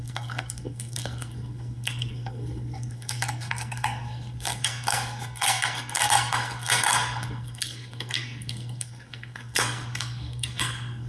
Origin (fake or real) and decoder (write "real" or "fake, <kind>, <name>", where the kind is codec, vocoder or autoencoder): fake, codec, SNAC